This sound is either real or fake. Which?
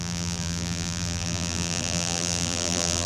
fake